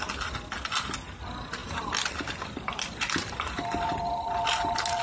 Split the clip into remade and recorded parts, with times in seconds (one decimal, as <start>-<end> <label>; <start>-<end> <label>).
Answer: 0.0-5.0 recorded